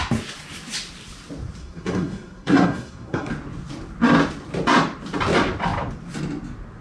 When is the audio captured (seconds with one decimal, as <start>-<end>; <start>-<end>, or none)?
0.0-1.6; 3.3-6.8